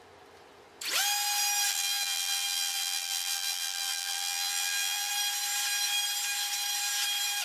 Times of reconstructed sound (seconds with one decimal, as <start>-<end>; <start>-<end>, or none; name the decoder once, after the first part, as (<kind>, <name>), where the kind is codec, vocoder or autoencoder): 1.7-5.1 (vocoder, BigVGAN v2)